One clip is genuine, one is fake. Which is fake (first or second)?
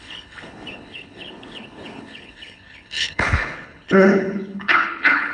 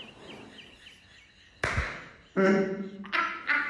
first